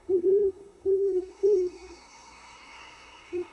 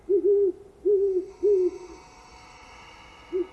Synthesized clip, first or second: first